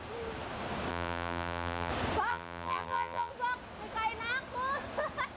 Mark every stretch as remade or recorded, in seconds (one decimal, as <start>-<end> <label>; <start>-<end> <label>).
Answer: 0.0-0.9 recorded; 0.9-1.9 remade; 1.9-2.3 recorded; 2.3-3.3 remade; 3.3-5.4 recorded